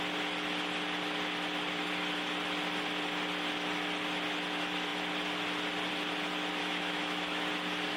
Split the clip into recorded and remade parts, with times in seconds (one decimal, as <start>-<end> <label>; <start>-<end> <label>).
0.0-6.6 recorded; 6.6-7.5 remade; 7.5-8.0 recorded

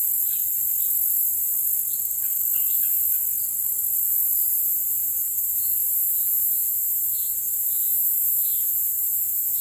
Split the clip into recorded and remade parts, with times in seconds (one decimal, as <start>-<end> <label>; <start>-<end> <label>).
0.0-4.5 recorded; 4.5-9.6 remade

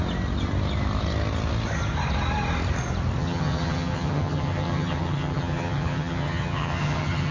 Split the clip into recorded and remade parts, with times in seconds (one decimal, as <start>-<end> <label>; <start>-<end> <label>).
0.0-3.2 recorded; 3.2-7.3 remade

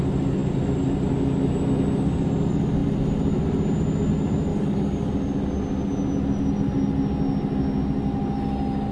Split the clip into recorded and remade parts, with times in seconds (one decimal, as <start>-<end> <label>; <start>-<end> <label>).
0.0-4.5 recorded; 4.5-5.1 remade; 5.1-8.9 recorded

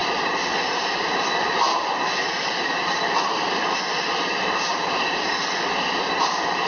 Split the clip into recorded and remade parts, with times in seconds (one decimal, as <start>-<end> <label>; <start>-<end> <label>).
0.0-3.9 remade; 3.9-6.7 recorded

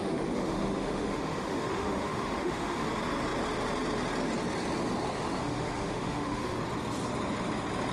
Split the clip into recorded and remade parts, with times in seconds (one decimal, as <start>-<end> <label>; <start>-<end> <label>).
0.0-2.9 remade; 2.9-5.4 recorded; 5.4-6.6 remade; 6.6-7.9 recorded